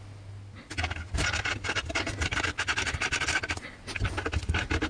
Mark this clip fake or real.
real